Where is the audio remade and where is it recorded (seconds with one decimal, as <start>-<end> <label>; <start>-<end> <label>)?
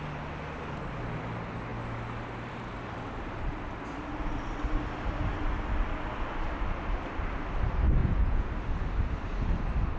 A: 0.0-8.0 recorded; 8.0-8.5 remade; 8.5-10.0 recorded